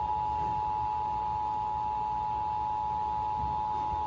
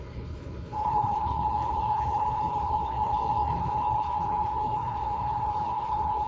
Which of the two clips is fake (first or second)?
second